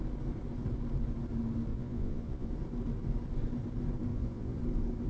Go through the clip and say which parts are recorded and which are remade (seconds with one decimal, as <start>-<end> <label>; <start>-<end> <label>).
0.0-1.7 recorded; 1.7-2.5 remade; 2.5-4.1 recorded; 4.1-4.6 remade; 4.6-5.1 recorded